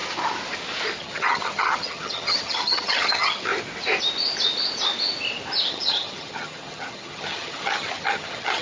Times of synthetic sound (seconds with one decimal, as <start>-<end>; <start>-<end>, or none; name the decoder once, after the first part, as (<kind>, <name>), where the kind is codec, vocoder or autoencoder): 1.0-3.5 (vocoder, HiFi-GAN); 5.7-8.6

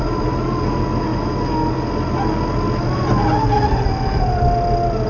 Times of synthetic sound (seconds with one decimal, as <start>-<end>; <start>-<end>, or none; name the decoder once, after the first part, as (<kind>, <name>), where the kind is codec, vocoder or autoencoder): none

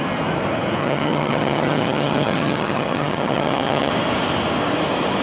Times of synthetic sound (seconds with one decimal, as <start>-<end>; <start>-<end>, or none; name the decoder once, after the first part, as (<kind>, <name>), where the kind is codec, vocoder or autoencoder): 0.8-3.9 (vocoder, HiFi-GAN)

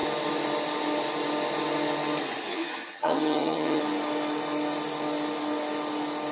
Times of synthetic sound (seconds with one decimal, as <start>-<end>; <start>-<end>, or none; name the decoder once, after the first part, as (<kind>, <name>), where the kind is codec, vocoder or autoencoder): 2.5-3.8 (vocoder, HiFi-GAN)

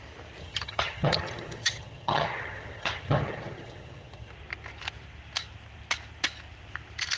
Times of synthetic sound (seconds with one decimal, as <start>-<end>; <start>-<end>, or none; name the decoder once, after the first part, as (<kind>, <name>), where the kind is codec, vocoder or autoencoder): 0.4-4.3 (vocoder, HiFi-GAN)

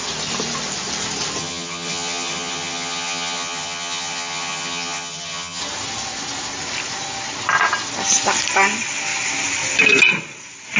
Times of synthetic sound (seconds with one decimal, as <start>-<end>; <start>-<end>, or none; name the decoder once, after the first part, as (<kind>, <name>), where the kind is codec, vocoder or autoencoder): 1.4-5.6 (vocoder, HiFi-GAN)

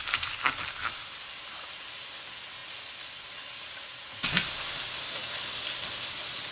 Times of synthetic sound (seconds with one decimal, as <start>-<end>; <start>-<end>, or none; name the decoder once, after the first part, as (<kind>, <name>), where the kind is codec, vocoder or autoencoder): none

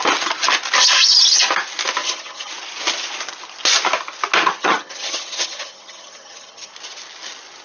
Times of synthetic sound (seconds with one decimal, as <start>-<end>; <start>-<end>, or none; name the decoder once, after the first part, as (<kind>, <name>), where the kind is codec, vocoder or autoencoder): 2.0-2.5 (vocoder, HiFi-GAN); 4.6-6.7